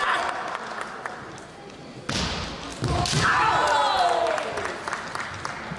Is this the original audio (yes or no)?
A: yes